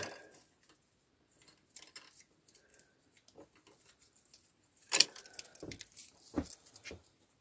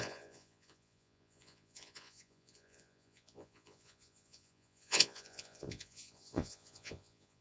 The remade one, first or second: second